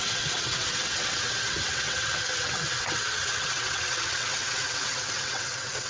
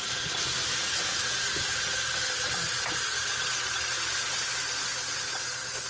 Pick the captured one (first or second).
second